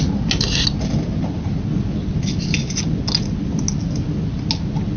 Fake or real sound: real